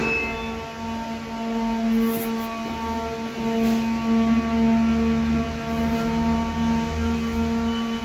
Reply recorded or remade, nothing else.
recorded